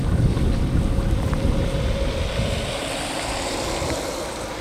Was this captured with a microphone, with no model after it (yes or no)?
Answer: yes